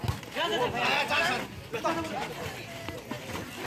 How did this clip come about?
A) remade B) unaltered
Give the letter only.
B